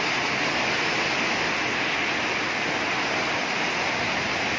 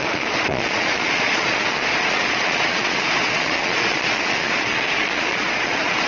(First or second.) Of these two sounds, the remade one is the second